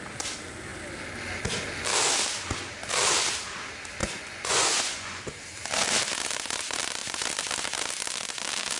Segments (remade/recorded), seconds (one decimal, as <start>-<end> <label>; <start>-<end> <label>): 0.0-4.0 recorded; 4.0-5.2 remade; 5.2-8.8 recorded